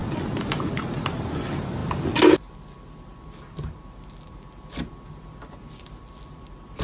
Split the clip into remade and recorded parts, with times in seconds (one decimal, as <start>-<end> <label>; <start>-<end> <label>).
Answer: 0.0-0.7 remade; 0.7-6.8 recorded